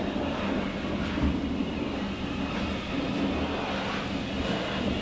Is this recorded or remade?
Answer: recorded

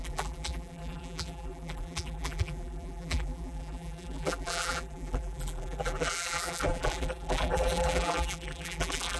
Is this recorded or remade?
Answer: remade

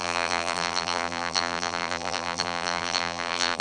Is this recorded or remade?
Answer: remade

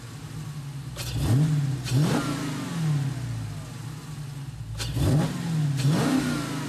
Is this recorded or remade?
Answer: recorded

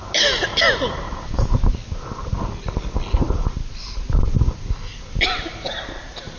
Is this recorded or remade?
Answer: recorded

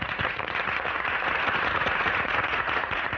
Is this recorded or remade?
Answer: remade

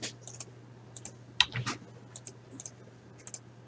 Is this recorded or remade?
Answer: recorded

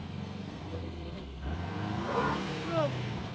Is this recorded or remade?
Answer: remade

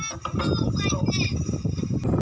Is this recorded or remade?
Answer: recorded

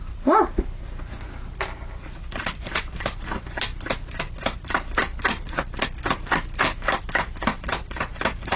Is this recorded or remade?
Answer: recorded